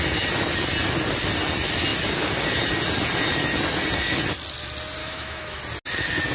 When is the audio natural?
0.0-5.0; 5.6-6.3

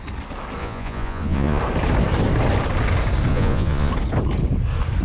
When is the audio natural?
0.0-0.6; 1.6-3.3; 3.9-5.0

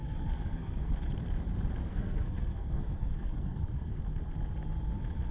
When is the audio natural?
0.9-1.8; 4.0-5.3